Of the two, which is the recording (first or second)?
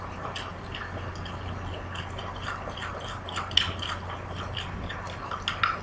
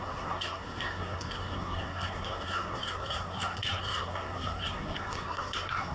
first